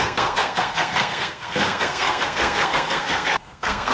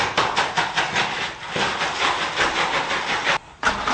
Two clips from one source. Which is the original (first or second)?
second